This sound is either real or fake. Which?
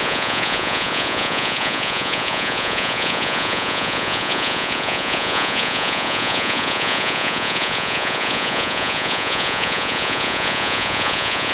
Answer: fake